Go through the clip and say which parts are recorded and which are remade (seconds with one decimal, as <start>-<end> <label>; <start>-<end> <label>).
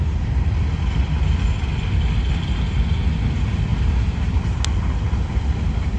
0.0-6.0 recorded